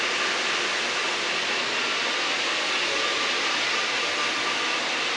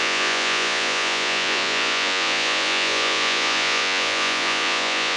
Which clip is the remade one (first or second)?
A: second